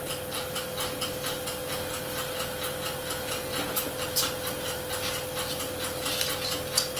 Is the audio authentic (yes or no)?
yes